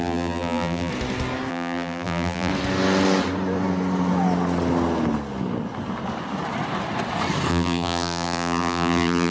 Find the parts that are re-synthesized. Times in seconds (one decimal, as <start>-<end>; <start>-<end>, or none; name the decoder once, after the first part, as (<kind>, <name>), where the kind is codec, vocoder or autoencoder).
0.0-0.9 (vocoder, BigVGAN v2); 1.5-2.5; 7.5-9.3